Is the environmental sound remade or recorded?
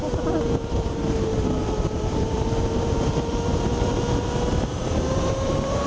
remade